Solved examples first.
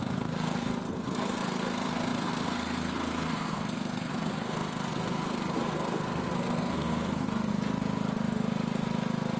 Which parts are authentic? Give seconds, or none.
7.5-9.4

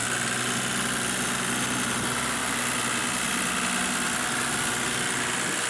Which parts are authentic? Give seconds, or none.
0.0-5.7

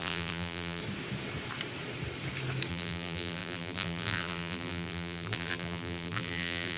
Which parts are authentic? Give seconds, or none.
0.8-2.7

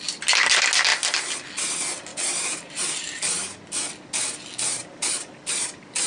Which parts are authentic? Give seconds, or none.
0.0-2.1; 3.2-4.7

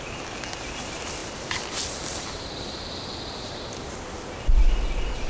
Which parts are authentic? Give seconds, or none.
0.0-5.3